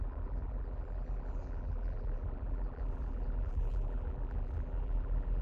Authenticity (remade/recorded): remade